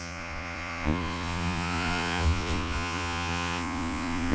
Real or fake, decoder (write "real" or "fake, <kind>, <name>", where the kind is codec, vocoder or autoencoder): fake, vocoder, Vocos